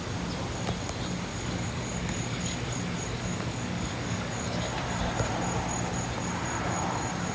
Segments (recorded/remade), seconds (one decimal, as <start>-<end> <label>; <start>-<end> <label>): 0.0-1.3 recorded; 1.3-4.7 remade; 4.7-7.3 recorded